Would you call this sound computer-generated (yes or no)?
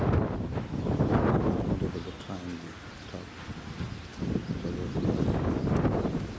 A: no